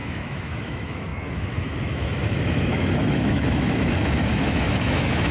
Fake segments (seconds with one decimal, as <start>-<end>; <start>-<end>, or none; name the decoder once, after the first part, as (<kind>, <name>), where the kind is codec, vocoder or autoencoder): 0.0-5.3 (autoencoder, DAC-VAE)

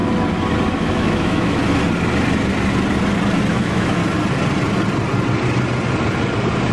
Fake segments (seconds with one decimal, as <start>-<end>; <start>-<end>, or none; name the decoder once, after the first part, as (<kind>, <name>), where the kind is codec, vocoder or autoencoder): 0.7-1.6 (autoencoder, DAC-VAE); 3.5-4.0